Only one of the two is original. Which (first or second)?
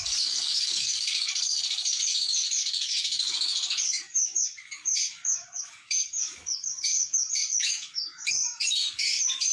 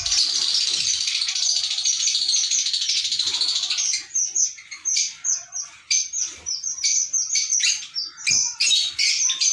second